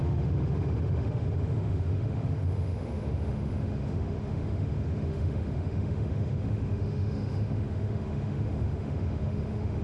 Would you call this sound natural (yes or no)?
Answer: no